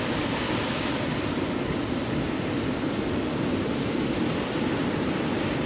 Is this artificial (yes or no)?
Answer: no